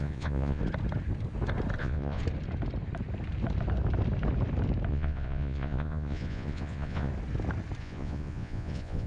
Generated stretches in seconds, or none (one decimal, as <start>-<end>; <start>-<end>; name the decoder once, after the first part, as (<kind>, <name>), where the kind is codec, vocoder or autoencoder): 0.0-0.6 (vocoder, Vocos); 1.8-2.2; 4.9-7.1; 7.8-9.1